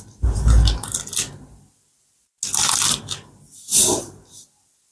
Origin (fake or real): real